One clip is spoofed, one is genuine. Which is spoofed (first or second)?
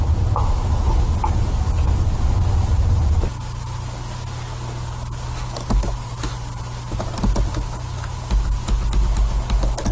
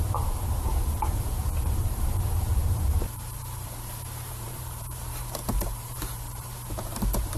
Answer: second